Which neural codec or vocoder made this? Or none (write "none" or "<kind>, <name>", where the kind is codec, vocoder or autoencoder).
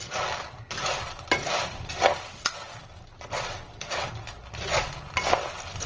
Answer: none